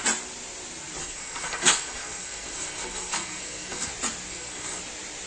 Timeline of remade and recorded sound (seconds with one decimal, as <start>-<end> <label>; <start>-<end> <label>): 0.0-1.0 recorded; 1.0-3.9 remade; 3.9-4.3 recorded; 4.3-4.8 remade; 4.8-5.3 recorded